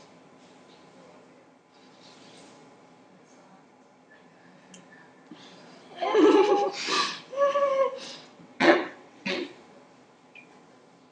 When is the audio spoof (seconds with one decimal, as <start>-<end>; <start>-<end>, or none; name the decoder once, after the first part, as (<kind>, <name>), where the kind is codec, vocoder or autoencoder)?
8.1-9.4 (vocoder, WaveNeXt)